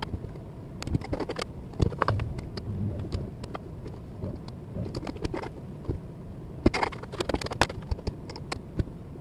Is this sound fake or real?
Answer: real